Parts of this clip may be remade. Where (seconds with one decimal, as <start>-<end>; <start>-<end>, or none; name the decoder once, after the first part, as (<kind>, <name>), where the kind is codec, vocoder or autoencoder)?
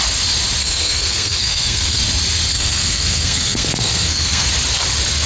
0.6-2.0 (codec, SNAC); 2.5-4.5